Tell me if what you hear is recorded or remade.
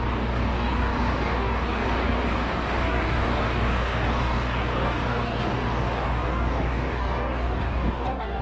remade